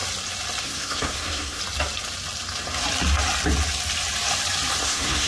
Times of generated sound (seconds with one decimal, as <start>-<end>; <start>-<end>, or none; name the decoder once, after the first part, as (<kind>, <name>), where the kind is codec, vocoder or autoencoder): 0.6-1.6 (codec, SNAC); 4.8-5.3